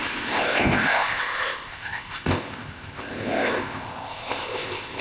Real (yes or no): no